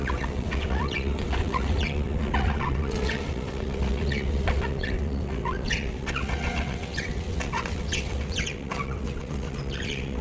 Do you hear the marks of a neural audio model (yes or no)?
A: yes